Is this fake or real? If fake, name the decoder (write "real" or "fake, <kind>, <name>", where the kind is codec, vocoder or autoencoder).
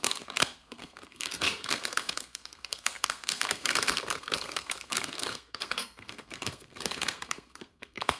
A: fake, codec, SNAC